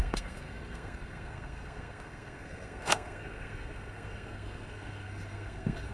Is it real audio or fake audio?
fake